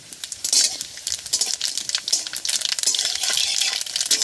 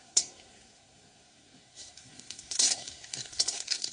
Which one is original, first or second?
first